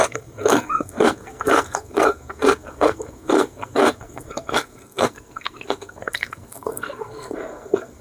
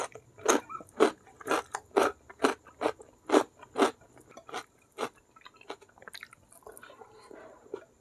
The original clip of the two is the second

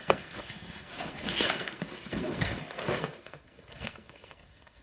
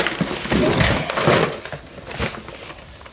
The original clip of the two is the second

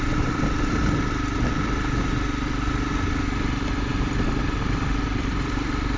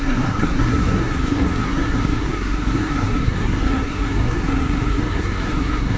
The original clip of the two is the first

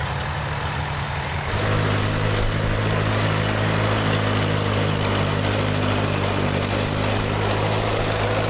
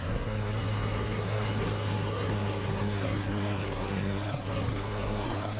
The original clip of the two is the first